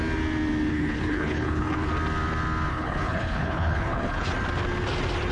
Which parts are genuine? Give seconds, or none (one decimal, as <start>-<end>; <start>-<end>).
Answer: 0.0-0.7; 1.9-2.7; 4.3-5.3